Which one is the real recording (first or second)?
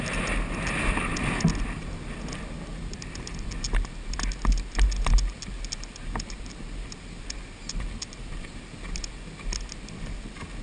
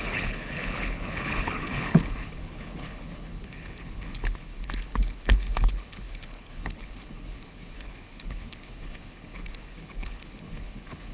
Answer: first